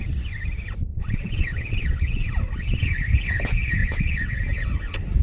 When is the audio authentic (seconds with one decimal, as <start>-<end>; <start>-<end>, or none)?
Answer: 0.0-0.9; 2.3-3.8; 4.4-5.2